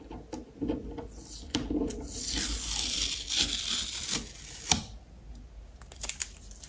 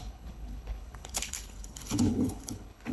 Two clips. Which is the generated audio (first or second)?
second